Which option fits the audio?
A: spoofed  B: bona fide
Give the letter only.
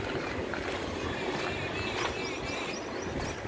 B